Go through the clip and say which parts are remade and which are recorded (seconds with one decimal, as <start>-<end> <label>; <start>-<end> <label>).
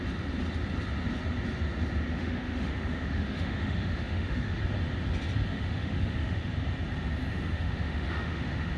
0.0-2.1 recorded; 2.1-4.6 remade; 4.6-5.5 recorded; 5.5-6.5 remade; 6.5-7.2 recorded; 7.2-8.8 remade